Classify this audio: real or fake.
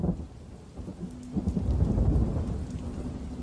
real